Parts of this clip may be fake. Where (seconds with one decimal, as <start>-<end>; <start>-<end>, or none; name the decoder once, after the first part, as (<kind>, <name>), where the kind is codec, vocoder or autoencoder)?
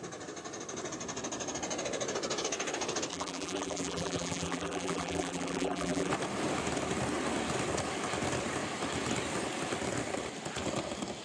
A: 3.1-6.1 (vocoder, BigVGAN v2)